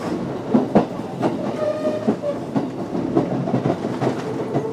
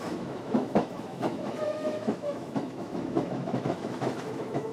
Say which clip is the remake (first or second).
second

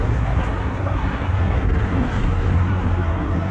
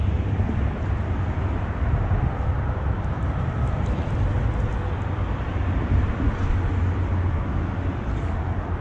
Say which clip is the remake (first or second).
first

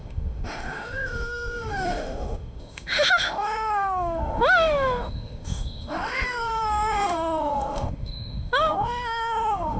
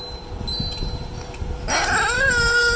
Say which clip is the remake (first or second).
first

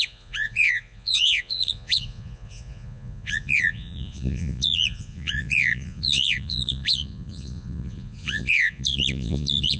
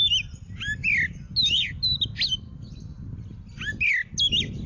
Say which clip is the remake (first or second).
first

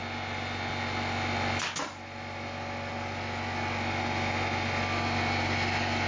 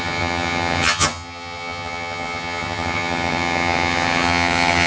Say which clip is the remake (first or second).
second